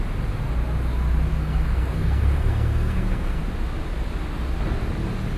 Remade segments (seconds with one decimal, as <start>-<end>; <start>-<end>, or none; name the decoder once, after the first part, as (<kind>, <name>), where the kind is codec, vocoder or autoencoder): 1.3-3.4 (codec, SNAC)